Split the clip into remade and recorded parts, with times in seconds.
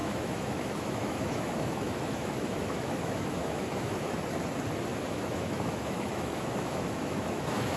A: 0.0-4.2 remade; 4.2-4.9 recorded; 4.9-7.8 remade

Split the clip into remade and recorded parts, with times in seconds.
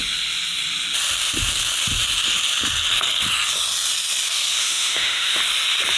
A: 0.0-4.6 recorded; 4.6-5.4 remade; 5.4-6.0 recorded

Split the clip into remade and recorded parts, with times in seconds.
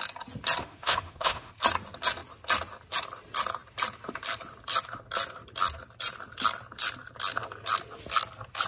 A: 0.0-0.6 recorded; 0.6-1.5 remade; 1.5-8.7 recorded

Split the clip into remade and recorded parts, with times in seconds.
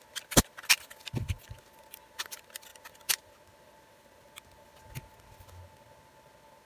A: 0.0-6.7 recorded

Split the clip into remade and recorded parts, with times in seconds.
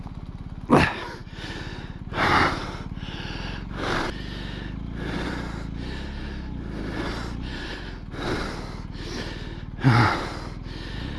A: 0.0-11.2 recorded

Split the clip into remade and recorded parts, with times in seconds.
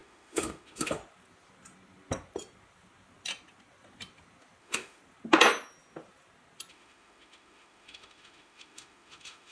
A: 0.0-1.0 remade; 1.0-4.6 recorded; 4.6-5.0 remade; 5.0-6.7 recorded; 6.7-9.5 remade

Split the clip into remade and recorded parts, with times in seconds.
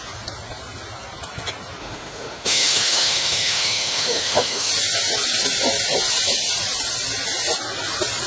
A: 0.0-1.8 recorded; 1.8-4.7 remade; 4.7-8.3 recorded